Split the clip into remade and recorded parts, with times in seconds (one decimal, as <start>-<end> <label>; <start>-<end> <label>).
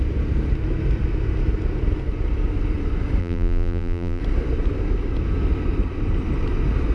0.0-3.2 recorded; 3.2-4.2 remade; 4.2-6.9 recorded